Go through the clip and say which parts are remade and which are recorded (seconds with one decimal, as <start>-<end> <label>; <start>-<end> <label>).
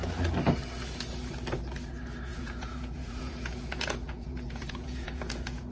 0.0-2.3 recorded; 2.3-5.7 remade